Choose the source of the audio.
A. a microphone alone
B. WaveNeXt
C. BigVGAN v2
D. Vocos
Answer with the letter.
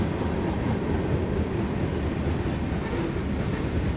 A